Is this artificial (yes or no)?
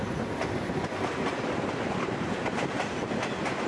no